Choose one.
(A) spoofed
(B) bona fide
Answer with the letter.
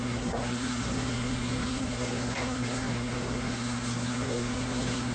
A